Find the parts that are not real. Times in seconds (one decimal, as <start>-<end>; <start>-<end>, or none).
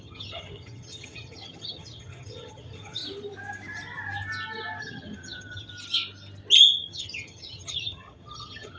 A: 0.0-3.0; 4.8-5.7; 6.8-8.8